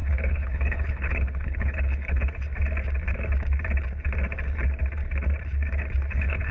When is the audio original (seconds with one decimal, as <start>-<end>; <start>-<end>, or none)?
2.5-6.1